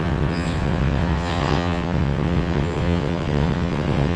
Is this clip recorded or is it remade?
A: remade